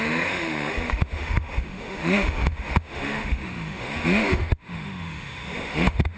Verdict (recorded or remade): remade